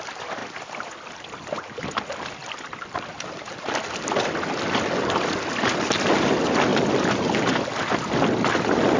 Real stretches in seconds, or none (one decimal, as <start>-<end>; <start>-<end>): 0.0-0.4; 0.9-2.4; 3.6-6.7; 7.6-9.0